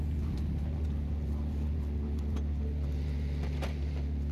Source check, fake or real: real